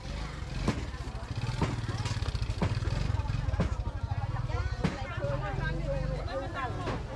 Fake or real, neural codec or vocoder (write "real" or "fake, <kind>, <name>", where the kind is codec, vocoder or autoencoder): real